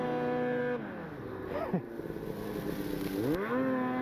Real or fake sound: real